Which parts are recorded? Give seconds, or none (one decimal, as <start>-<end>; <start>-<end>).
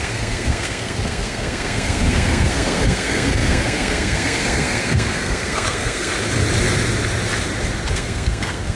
6.1-7.9